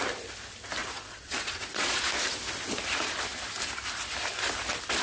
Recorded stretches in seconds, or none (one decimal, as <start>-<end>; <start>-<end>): 0.0-0.8; 2.1-5.0